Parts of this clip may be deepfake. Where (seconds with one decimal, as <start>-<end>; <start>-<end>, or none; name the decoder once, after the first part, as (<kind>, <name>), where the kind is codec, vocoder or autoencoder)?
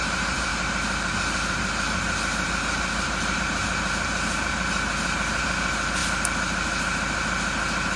none